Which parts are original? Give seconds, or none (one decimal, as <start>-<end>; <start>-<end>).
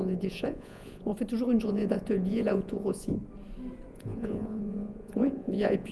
1.1-1.6; 3.2-3.9